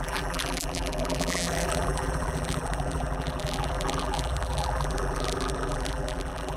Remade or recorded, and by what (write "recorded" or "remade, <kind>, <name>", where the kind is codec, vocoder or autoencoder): remade, vocoder, BigVGAN v2